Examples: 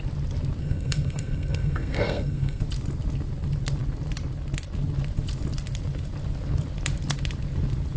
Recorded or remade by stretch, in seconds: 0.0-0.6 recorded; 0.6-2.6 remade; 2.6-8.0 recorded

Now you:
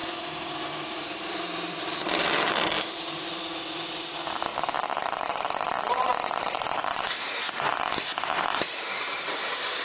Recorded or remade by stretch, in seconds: 0.0-7.7 remade; 7.7-8.6 recorded; 8.6-9.8 remade